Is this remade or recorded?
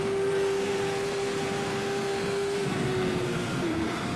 remade